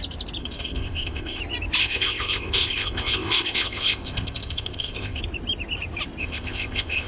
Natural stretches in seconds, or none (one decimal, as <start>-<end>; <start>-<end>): 0.0-0.4; 1.4-1.8; 5.2-6.2